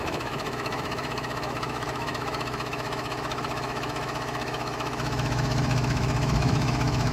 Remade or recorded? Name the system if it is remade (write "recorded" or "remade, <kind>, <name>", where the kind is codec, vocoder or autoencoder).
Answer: remade, autoencoder, DAC-VAE